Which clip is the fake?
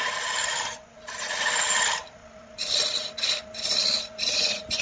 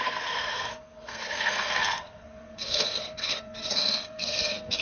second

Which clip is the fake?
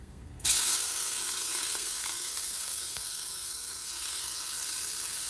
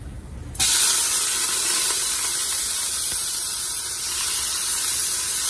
first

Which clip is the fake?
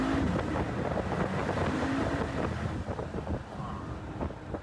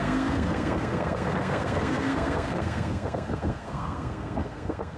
second